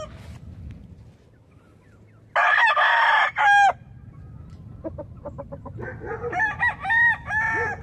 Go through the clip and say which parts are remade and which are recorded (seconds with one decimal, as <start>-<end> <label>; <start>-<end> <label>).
0.0-7.8 recorded